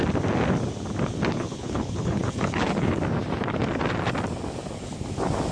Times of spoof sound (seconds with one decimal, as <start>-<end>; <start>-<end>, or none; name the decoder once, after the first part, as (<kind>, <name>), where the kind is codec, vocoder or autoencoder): 1.3-3.0 (codec, HILCodec)